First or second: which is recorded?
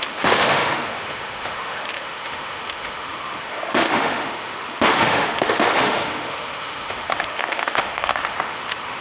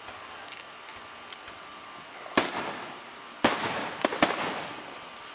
second